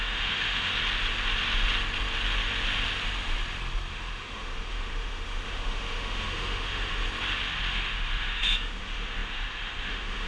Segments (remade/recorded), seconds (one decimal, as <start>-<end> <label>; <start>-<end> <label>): 0.0-0.7 remade; 0.7-3.9 recorded; 3.9-7.0 remade; 7.0-7.7 recorded; 7.7-10.3 remade